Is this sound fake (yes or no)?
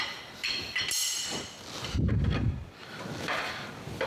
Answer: no